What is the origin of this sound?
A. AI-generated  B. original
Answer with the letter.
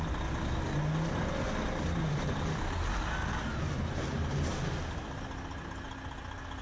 B